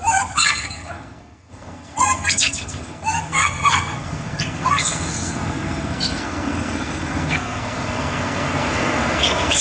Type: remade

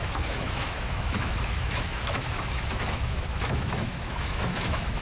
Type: remade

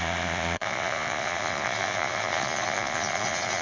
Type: remade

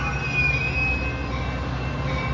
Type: recorded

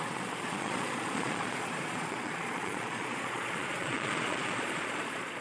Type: remade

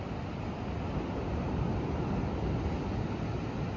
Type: recorded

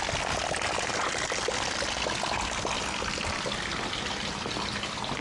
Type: recorded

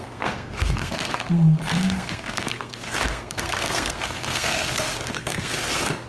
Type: remade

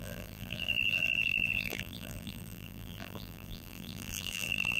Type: remade